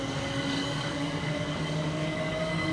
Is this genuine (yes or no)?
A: no